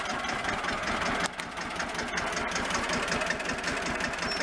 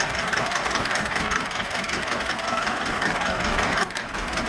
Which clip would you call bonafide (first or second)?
first